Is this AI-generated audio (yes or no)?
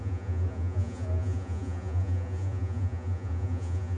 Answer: yes